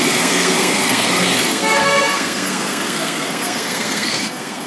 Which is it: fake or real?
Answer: fake